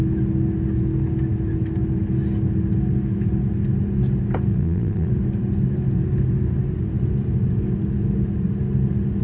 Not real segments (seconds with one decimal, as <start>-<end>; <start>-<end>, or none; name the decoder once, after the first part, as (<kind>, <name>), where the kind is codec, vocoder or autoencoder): 4.5-5.1 (vocoder, Vocos)